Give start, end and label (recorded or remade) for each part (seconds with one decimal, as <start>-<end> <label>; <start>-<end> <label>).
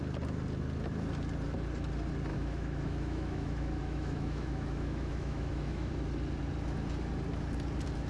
0.0-2.3 recorded; 2.3-5.9 remade; 5.9-8.1 recorded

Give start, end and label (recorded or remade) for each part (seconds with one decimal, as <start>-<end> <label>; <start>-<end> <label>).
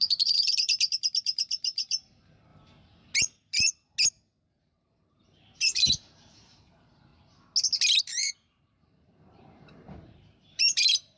0.0-2.5 remade; 2.5-3.2 recorded; 3.2-3.7 remade; 3.7-4.6 recorded; 4.6-7.1 remade; 7.1-8.0 recorded; 8.0-11.2 remade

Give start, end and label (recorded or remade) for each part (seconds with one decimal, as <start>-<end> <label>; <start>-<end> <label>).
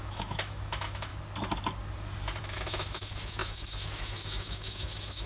0.0-1.1 remade; 1.1-2.4 recorded; 2.4-5.3 remade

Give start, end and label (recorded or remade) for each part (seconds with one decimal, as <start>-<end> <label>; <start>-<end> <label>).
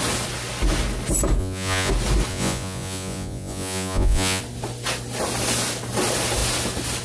0.0-1.4 recorded; 1.4-1.9 remade; 1.9-2.3 recorded; 2.3-4.4 remade; 4.4-7.0 recorded